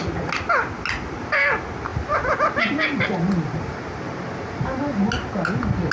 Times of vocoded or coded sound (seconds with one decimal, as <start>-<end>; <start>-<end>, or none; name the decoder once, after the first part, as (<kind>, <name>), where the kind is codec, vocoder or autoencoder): 1.9-5.0 (vocoder, BigVGAN v2)